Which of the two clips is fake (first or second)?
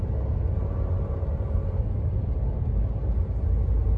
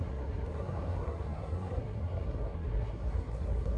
second